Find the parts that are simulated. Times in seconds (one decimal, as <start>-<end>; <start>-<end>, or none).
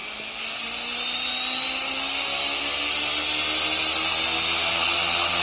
none